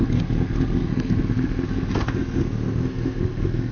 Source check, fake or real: fake